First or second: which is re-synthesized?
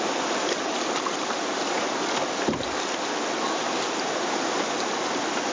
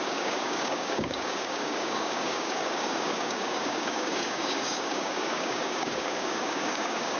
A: second